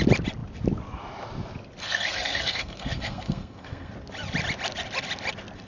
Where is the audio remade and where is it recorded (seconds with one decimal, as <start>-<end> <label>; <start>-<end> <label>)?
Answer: 0.0-1.8 recorded; 1.8-3.9 remade; 3.9-5.7 recorded